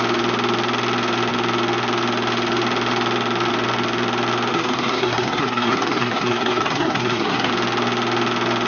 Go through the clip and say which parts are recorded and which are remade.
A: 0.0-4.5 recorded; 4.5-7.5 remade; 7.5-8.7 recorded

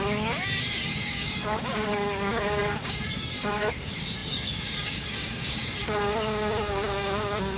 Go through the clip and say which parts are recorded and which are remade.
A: 0.0-7.6 remade

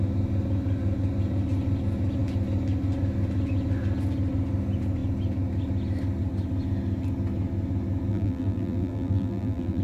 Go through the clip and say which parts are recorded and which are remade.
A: 0.0-8.1 recorded; 8.1-9.8 remade

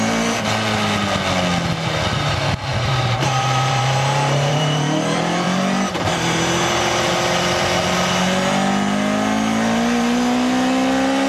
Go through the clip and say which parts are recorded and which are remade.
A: 0.0-2.7 recorded; 2.7-7.1 remade; 7.1-11.3 recorded

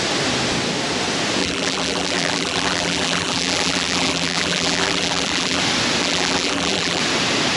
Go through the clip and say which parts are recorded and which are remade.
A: 0.0-1.4 recorded; 1.4-5.6 remade; 5.6-6.0 recorded; 6.0-7.0 remade; 7.0-7.6 recorded

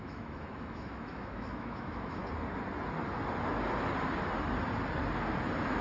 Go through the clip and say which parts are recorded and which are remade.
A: 0.0-2.2 remade; 2.2-5.8 recorded

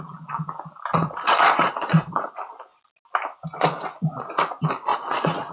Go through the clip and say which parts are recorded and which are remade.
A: 0.0-0.9 recorded; 0.9-2.3 remade; 2.3-4.9 recorded; 4.9-5.5 remade

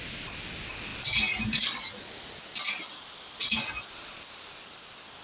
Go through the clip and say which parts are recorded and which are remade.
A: 0.0-5.2 recorded